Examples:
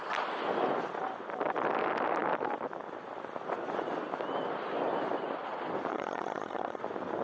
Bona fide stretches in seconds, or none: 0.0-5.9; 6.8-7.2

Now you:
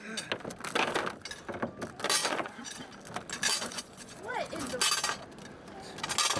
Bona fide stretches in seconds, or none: 0.0-2.2; 2.8-3.5; 4.7-6.4